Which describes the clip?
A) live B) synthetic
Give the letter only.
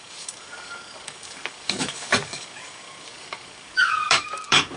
B